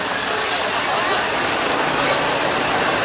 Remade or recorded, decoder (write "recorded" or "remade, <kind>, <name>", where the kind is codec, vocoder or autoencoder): recorded